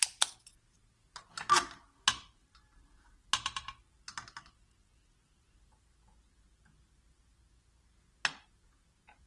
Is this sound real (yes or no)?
yes